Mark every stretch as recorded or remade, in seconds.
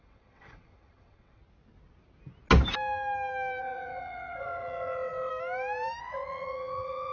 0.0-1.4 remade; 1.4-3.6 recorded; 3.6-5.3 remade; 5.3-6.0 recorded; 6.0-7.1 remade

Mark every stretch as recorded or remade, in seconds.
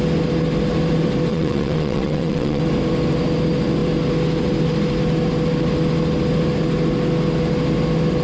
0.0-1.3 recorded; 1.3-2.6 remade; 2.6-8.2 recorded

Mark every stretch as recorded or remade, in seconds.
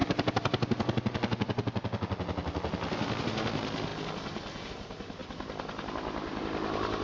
0.0-7.0 recorded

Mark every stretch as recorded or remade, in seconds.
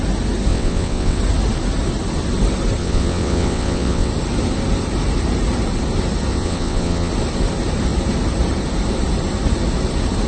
0.0-0.5 recorded; 0.5-1.2 remade; 1.2-2.8 recorded; 2.8-4.1 remade; 4.1-6.3 recorded; 6.3-7.1 remade; 7.1-10.3 recorded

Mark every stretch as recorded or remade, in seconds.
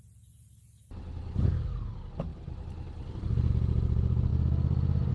0.0-5.1 recorded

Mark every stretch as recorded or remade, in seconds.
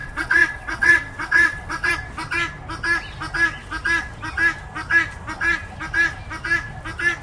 0.0-1.9 remade; 1.9-7.2 recorded